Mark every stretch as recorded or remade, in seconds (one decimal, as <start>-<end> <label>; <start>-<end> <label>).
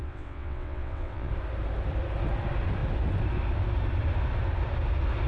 0.0-1.3 remade; 1.3-5.3 recorded